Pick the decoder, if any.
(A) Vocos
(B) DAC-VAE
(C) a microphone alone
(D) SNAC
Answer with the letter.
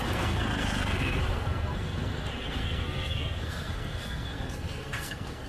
D